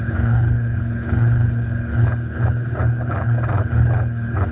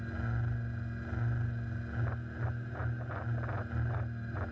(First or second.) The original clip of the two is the second